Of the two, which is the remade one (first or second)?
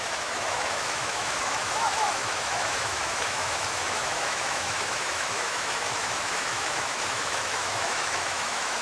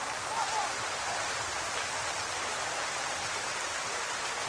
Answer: first